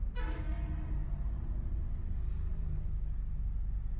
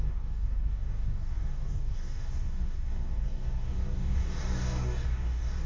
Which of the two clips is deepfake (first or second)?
second